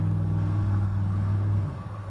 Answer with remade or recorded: remade